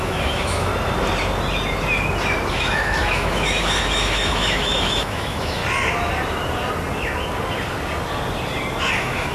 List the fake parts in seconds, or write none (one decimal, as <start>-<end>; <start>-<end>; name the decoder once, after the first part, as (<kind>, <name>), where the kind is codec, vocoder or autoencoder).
0.0-0.7 (autoencoder, DAC-VAE); 2.5-5.6; 8.9-9.3